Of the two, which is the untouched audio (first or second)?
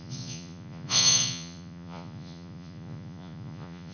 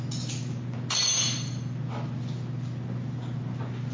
second